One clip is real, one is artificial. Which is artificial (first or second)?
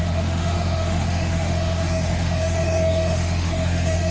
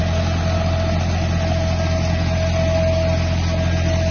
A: first